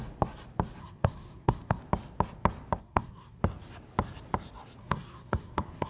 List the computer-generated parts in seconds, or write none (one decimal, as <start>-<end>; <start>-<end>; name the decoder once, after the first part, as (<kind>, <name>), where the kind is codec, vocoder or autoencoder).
0.8-1.8 (codec, SNAC); 2.8-3.4; 4.8-5.9